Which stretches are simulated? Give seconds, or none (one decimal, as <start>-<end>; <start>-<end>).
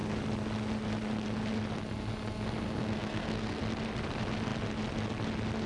2.8-3.6